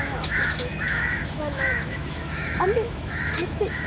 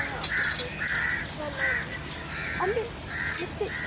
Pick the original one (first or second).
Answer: second